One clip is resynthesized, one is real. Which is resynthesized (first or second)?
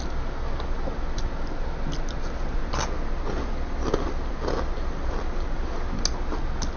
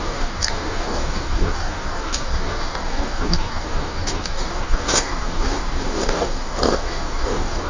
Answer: second